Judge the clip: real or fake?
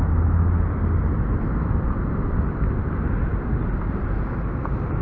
real